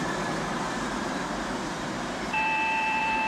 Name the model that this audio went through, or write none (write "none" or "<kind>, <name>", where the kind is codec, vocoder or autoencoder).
vocoder, BigVGAN v2